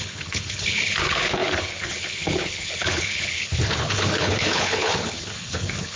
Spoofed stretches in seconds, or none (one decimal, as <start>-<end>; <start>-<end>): 0.0-6.0